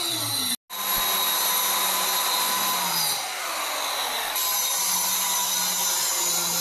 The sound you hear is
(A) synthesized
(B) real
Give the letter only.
B